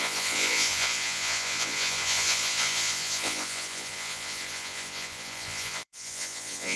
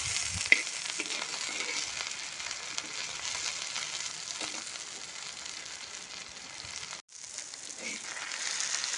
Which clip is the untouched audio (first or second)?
second